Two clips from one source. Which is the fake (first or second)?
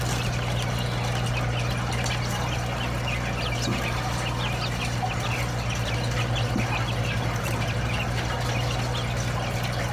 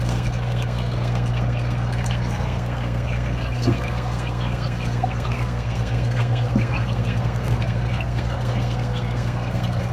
second